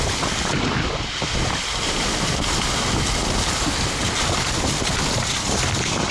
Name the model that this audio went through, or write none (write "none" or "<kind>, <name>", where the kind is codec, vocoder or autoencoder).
none